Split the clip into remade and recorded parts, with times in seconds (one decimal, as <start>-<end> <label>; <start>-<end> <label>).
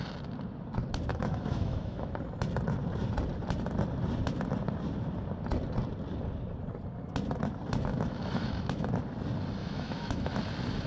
0.0-1.1 recorded; 1.1-2.1 remade; 2.1-7.9 recorded; 7.9-8.9 remade; 8.9-9.6 recorded; 9.6-10.3 remade; 10.3-10.9 recorded